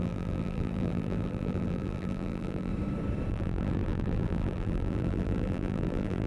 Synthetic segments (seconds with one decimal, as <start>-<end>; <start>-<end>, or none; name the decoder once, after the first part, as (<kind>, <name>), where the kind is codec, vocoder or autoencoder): 0.0-2.7 (vocoder, BigVGAN v2); 3.3-6.3